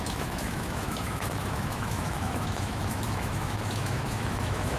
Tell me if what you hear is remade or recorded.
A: remade